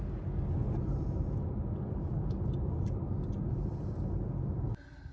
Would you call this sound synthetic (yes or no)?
no